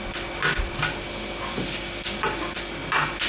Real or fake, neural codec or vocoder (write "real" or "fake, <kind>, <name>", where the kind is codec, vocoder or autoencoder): real